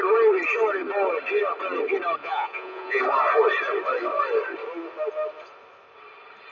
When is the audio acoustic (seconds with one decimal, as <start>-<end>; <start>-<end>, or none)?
0.0-2.2; 3.0-6.5